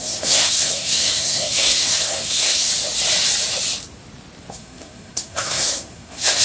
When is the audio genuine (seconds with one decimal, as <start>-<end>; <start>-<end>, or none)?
2.7-4.5